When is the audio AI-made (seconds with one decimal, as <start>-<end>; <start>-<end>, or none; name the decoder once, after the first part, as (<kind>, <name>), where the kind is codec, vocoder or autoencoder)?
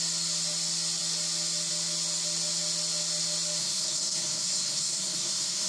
3.6-5.7 (codec, SNAC)